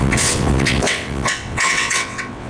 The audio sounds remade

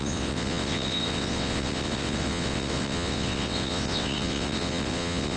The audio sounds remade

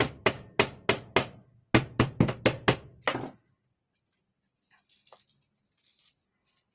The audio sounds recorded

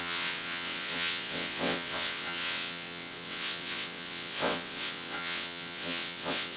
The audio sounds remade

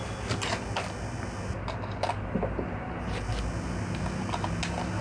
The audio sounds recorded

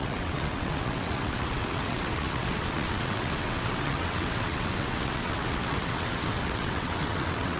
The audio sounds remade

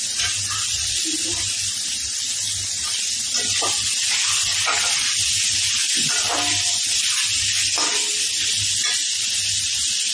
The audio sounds recorded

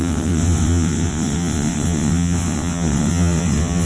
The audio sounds remade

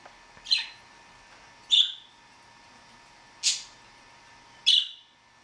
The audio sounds recorded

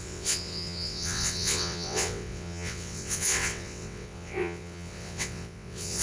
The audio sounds remade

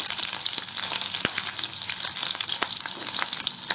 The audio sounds recorded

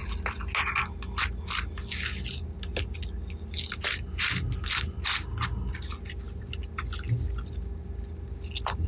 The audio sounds recorded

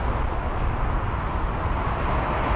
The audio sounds recorded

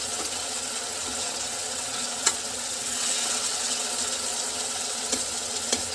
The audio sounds remade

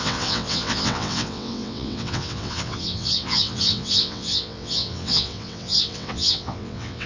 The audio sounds remade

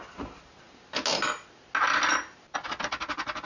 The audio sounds recorded